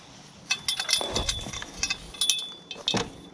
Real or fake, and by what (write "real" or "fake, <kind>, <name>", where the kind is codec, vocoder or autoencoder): real